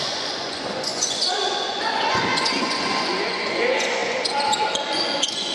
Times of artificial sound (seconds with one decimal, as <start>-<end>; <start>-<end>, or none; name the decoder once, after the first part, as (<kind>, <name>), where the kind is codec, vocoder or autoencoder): 0.0-5.5 (vocoder, Vocos)